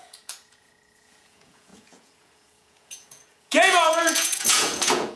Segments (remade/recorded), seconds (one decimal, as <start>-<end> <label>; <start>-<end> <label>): 0.0-5.2 remade